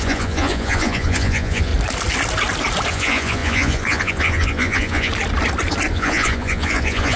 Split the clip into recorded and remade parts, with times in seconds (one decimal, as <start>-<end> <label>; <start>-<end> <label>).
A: 0.0-1.7 remade; 1.7-2.9 recorded; 2.9-5.1 remade; 5.1-5.9 recorded; 5.9-7.2 remade